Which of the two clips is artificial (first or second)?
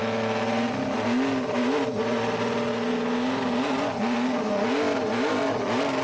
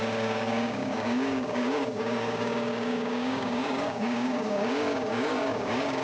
second